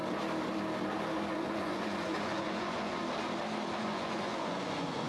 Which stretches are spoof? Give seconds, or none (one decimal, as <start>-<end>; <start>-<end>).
1.3-3.0; 3.8-5.1